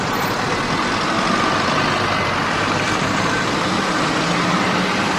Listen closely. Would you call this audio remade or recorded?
recorded